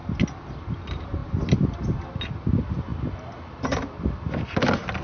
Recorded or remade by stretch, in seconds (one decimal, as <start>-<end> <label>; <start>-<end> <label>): 0.0-1.2 recorded; 1.2-2.0 remade; 2.0-2.9 recorded; 2.9-4.4 remade; 4.4-5.0 recorded